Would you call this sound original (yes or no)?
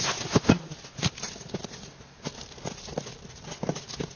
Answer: yes